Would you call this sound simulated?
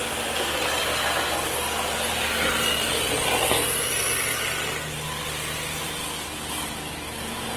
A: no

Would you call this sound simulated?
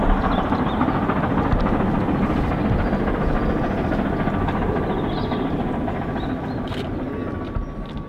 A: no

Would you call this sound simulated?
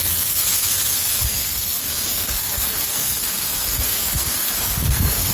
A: yes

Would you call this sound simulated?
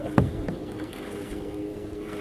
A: yes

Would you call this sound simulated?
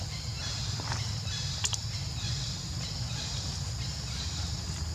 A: no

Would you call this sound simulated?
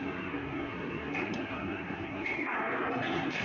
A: yes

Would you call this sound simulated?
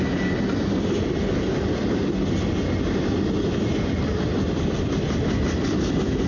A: no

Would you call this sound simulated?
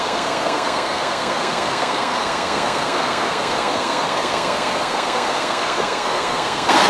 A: yes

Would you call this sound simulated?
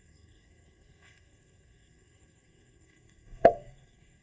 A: yes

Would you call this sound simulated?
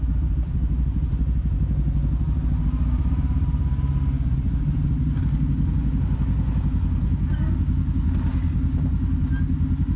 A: no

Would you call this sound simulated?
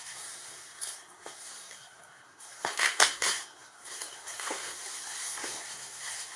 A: yes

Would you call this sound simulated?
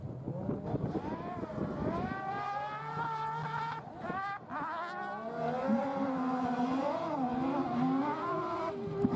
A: no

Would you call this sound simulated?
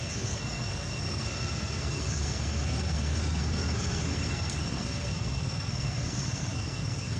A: yes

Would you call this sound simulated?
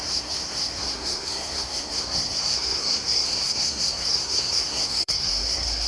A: yes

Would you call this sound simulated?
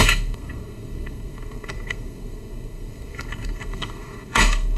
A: yes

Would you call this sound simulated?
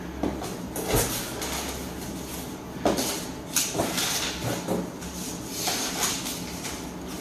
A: no